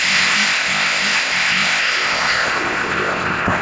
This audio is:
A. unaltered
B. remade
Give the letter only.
B